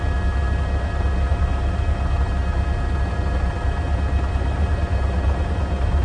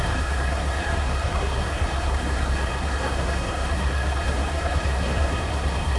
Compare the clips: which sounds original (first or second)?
first